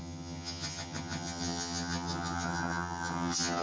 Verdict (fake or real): fake